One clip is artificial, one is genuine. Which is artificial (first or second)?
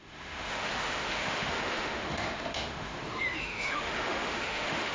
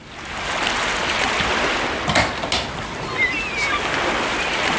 first